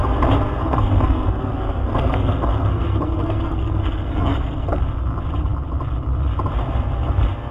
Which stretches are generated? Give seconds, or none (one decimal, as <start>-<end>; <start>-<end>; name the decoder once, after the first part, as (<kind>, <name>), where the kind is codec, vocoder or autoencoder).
0.6-4.8 (codec, SNAC)